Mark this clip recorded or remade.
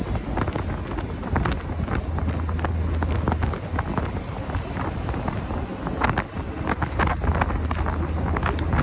recorded